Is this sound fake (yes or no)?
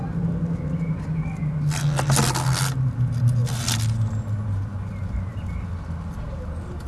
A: no